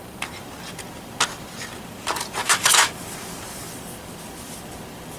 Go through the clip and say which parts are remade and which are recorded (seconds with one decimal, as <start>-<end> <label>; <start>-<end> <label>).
0.0-2.4 recorded; 2.4-2.9 remade; 2.9-5.2 recorded